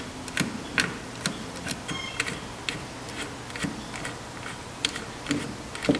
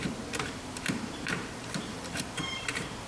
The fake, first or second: second